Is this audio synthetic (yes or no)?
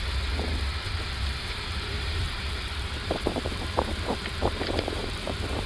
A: yes